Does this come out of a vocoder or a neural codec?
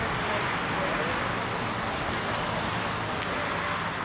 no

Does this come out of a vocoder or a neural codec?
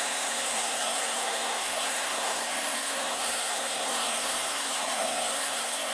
yes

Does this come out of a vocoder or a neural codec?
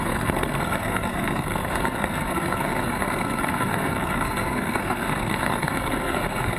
yes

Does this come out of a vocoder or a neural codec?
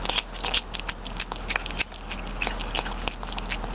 no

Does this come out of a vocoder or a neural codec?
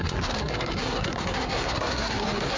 yes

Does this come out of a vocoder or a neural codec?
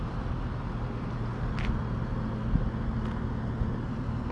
no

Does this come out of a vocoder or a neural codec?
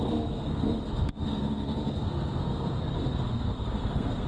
yes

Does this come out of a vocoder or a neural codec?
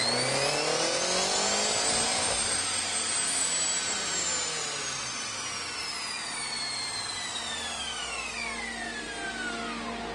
no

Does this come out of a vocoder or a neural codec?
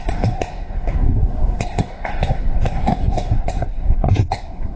yes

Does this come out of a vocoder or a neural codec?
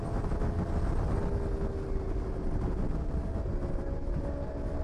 no